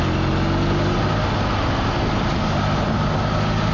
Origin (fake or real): real